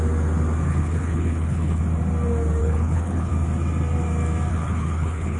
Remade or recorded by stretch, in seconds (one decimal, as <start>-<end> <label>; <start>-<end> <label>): 0.0-0.7 recorded; 0.7-1.8 remade; 1.8-2.6 recorded; 2.6-3.3 remade; 3.3-4.5 recorded; 4.5-5.4 remade